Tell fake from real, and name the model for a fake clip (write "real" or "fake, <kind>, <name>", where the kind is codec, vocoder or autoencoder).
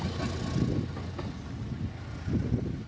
real